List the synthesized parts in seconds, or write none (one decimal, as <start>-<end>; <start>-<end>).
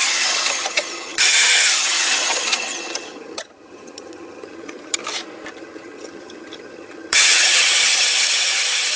0.0-5.0; 5.5-9.0